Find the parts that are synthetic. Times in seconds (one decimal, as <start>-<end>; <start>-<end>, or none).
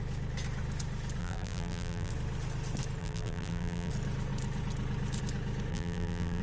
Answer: 1.2-2.1; 3.0-3.9; 5.7-6.4